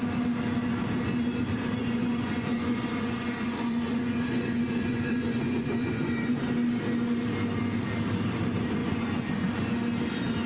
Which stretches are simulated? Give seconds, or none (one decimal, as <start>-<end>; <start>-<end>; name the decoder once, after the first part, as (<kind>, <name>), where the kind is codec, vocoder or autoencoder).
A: 1.8-6.4 (vocoder, Vocos); 8.8-9.7